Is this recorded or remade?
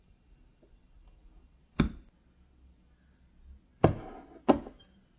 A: recorded